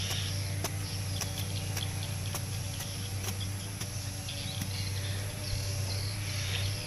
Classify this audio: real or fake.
real